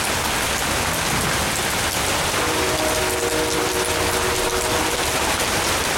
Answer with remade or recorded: recorded